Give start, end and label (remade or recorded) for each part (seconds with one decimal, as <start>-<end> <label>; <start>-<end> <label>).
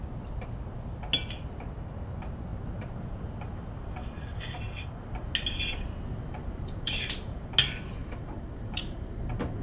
0.0-2.5 recorded; 2.5-3.0 remade; 3.0-6.4 recorded; 6.4-7.3 remade; 7.3-8.0 recorded; 8.0-9.1 remade; 9.1-9.6 recorded